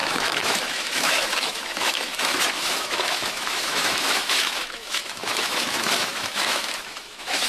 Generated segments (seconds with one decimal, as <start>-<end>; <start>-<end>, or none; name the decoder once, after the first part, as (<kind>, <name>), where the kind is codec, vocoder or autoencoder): 0.0-7.5 (autoencoder, DAC-VAE)